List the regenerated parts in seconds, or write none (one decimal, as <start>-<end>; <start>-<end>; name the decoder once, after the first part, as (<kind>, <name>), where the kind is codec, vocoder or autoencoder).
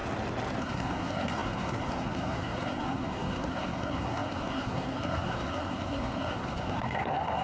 0.6-7.4 (codec, SNAC)